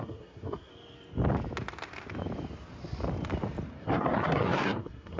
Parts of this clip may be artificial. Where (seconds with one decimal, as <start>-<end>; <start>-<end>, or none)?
0.0-0.7; 3.8-5.2